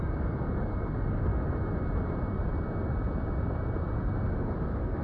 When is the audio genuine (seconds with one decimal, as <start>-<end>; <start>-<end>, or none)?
1.3-4.3